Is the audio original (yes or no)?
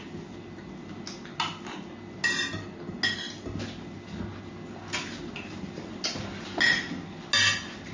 yes